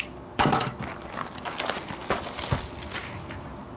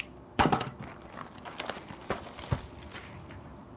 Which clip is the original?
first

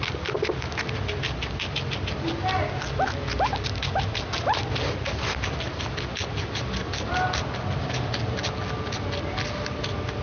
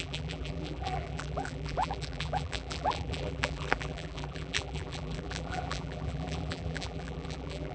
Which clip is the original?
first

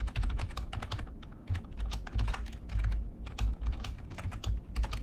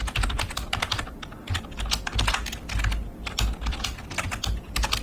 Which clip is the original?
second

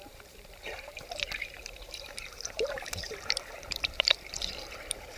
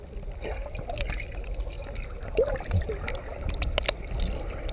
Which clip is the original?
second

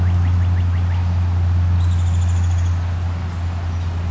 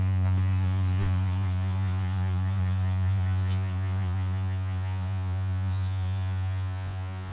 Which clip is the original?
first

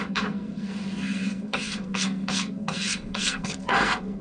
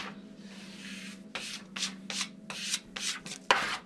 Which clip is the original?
second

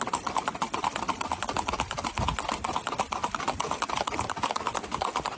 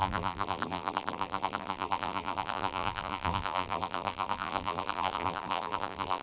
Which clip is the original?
first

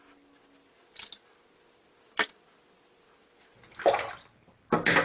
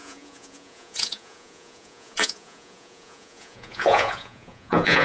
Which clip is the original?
first